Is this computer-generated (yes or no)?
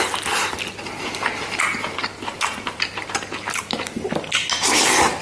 no